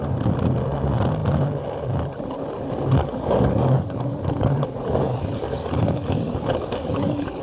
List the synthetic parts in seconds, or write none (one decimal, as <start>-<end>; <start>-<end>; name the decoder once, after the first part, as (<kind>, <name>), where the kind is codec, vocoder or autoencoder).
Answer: 3.0-7.4 (codec, DAC)